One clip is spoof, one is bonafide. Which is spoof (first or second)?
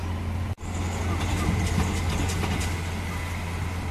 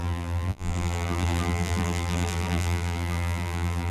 second